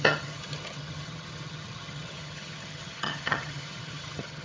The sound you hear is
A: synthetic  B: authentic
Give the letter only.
A